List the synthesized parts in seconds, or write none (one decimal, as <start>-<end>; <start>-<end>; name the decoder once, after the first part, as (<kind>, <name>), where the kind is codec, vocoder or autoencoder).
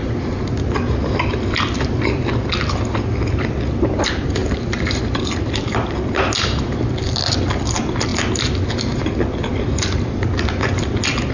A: 4.4-5.5 (vocoder, BigVGAN v2)